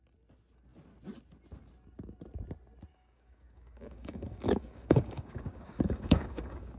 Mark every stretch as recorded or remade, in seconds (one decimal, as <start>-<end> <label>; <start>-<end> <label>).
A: 0.0-2.9 recorded; 2.9-6.8 remade